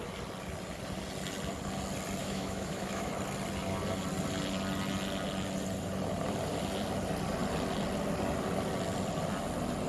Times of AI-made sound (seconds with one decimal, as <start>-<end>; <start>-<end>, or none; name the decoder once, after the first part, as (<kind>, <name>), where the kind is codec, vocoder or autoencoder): 2.2-3.1 (autoencoder, DAC-VAE)